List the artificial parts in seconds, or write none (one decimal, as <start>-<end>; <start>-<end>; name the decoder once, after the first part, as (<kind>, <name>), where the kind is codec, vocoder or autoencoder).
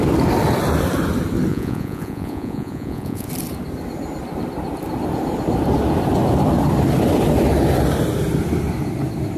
1.5-3.3 (vocoder, Vocos)